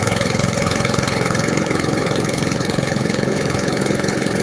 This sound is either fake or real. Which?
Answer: fake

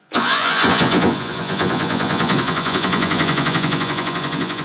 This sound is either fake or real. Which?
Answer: fake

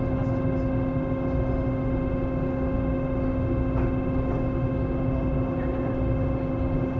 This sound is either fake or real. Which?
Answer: real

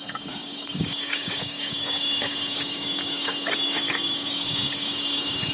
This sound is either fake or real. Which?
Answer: fake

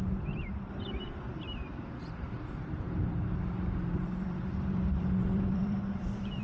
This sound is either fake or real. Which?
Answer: fake